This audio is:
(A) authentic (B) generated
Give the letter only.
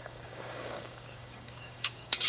B